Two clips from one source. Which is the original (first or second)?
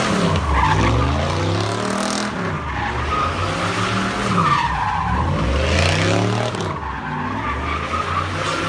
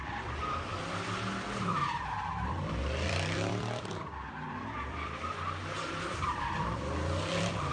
first